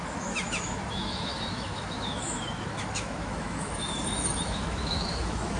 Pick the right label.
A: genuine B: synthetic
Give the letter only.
B